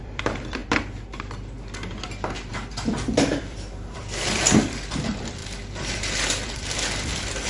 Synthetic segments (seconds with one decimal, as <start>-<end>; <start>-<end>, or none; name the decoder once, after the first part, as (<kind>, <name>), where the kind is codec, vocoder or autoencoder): 0.0-0.6 (vocoder, BigVGAN v2); 2.5-7.5